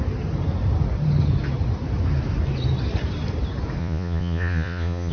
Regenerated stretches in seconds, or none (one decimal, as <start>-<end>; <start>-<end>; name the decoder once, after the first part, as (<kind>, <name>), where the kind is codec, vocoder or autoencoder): 3.8-5.1 (vocoder, Vocos)